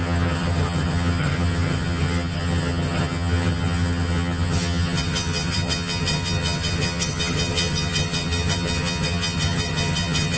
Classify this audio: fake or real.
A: fake